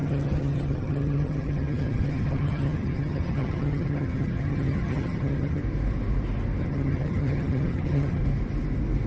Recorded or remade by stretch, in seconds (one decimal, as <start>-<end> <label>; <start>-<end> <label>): 0.0-5.6 remade; 5.6-6.6 recorded; 6.6-8.2 remade; 8.2-9.1 recorded